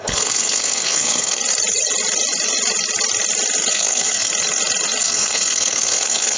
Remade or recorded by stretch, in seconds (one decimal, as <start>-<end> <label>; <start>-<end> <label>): 0.0-1.4 remade; 1.4-3.7 recorded; 3.7-4.3 remade; 4.3-5.0 recorded; 5.0-6.4 remade